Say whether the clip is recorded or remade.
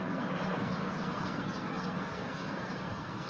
remade